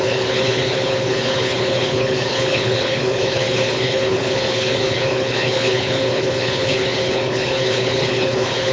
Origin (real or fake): fake